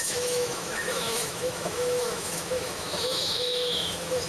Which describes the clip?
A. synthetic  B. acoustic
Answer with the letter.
A